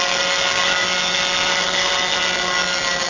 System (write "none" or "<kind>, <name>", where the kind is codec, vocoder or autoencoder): none